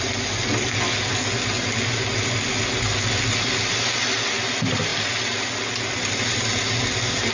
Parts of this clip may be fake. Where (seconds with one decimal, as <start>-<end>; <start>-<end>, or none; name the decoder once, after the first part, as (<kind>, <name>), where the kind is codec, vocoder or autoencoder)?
none